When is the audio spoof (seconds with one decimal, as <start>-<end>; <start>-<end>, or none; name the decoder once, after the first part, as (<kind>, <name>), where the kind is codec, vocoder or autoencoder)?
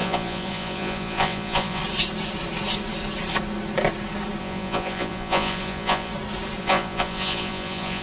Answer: 0.0-1.8 (vocoder, Vocos); 4.4-6.1; 6.6-8.0